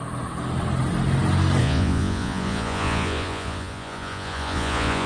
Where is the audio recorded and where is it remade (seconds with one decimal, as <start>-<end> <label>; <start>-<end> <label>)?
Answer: 0.0-1.6 recorded; 1.6-5.1 remade